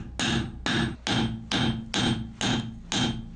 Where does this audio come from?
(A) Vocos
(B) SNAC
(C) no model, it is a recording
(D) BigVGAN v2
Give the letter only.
C